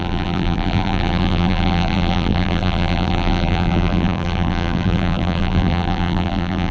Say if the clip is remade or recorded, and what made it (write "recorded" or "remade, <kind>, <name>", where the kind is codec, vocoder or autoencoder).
remade, vocoder, BigVGAN v2